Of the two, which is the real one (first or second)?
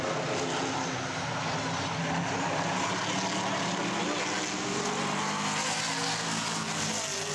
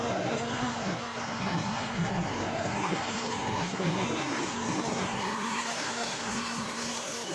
first